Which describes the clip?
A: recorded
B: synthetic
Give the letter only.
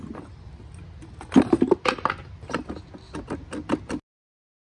A